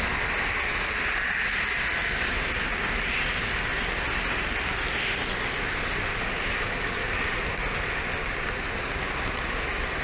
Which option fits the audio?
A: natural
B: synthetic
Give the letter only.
A